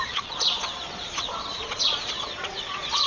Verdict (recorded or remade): remade